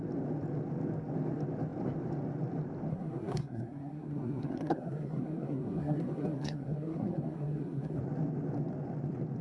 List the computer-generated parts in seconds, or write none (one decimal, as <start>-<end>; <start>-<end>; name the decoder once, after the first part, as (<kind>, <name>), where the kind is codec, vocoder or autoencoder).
2.9-8.0 (codec, SNAC)